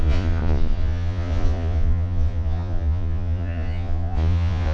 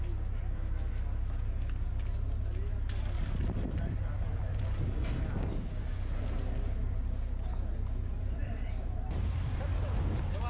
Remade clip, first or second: first